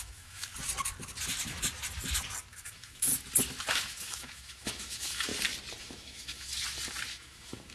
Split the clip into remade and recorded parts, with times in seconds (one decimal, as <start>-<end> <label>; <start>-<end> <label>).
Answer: 0.0-0.5 remade; 0.5-2.5 recorded; 2.5-3.1 remade; 3.1-3.7 recorded; 3.7-5.3 remade; 5.3-5.8 recorded; 5.8-6.5 remade; 6.5-7.1 recorded; 7.1-7.7 remade